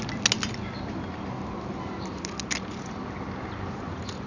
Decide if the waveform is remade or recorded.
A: recorded